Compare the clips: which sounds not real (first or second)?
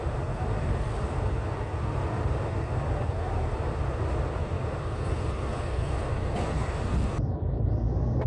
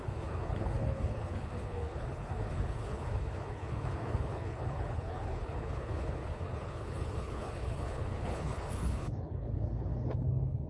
second